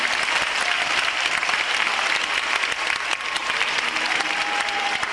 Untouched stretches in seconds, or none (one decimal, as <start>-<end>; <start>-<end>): 0.0-0.6; 1.9-3.4; 4.3-5.1

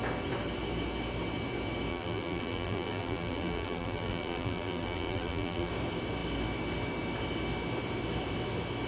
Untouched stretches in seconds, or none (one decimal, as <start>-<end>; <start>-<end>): 0.0-1.9; 5.7-8.9